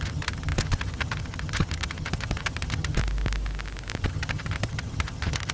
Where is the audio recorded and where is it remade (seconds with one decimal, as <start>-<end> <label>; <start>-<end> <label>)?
0.0-3.0 remade; 3.0-4.0 recorded; 4.0-5.5 remade